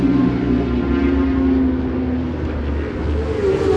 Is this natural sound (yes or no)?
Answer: yes